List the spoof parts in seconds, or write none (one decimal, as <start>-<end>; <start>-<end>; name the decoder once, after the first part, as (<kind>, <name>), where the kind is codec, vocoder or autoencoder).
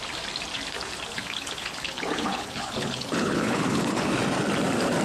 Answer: 1.1-4.1 (codec, HILCodec)